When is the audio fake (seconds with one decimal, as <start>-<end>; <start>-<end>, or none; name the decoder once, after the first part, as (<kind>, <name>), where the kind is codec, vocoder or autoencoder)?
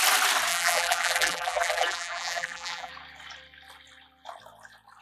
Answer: 0.5-2.9 (vocoder, BigVGAN v2)